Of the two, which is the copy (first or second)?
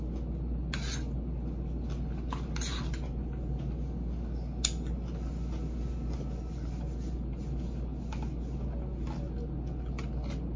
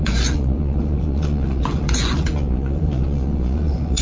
second